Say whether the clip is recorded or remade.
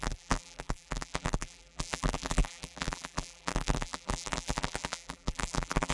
remade